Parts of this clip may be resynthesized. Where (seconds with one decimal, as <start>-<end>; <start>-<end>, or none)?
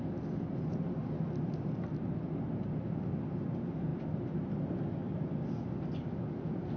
none